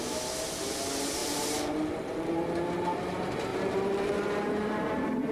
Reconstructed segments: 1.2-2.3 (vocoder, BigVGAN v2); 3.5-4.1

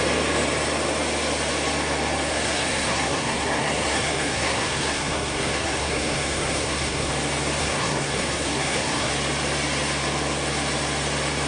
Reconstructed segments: 2.3-7.1 (codec, SNAC); 7.6-9.1

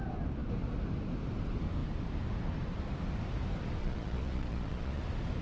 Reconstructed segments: 3.8-5.0 (vocoder, Vocos)

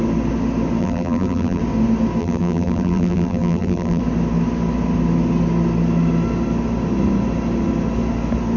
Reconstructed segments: 0.8-1.6 (vocoder, BigVGAN v2); 2.2-4.0

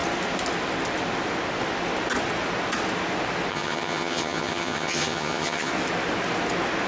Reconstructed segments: 3.5-5.7 (vocoder, HiFi-GAN)

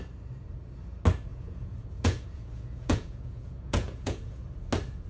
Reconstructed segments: 1.3-4.4 (vocoder, Vocos)